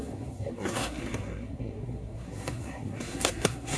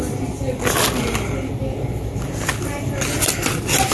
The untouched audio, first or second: second